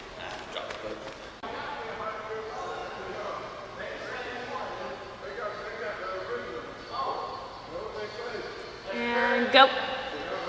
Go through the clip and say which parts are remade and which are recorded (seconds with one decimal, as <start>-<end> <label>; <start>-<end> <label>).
0.0-10.5 recorded